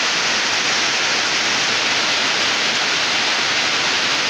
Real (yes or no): yes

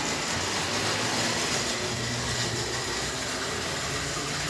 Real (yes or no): yes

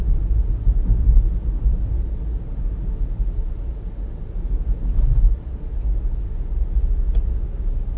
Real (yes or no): yes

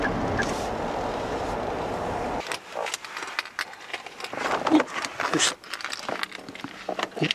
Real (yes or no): yes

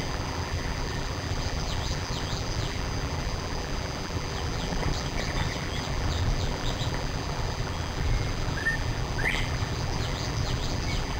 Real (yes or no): no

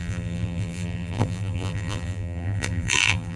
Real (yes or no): no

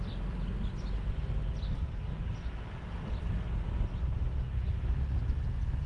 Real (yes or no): yes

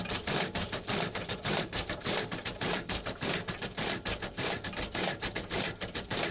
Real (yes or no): no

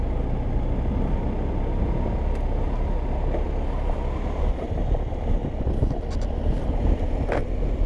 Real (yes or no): yes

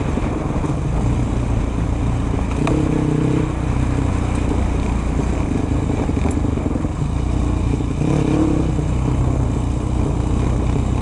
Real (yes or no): yes